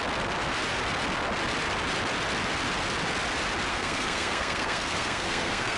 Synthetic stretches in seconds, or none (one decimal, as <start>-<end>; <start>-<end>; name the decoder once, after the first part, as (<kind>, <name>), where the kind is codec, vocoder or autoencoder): 3.7-5.8 (codec, SNAC)